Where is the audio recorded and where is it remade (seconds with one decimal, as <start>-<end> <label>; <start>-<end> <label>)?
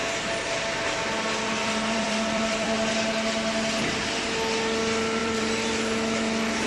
0.0-1.6 recorded; 1.6-2.9 remade; 2.9-5.2 recorded; 5.2-5.7 remade; 5.7-6.7 recorded